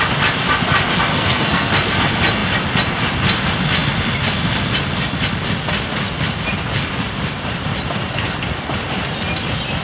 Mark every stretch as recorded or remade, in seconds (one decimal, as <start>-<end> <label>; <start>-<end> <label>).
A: 0.0-1.1 recorded; 1.1-1.7 remade; 1.7-9.8 recorded